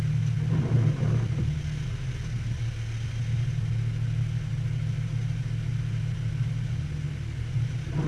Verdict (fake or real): real